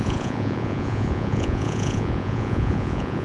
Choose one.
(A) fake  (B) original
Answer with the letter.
A